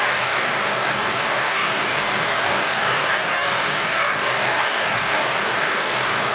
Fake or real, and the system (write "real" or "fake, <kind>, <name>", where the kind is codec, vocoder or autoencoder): fake, codec, DAC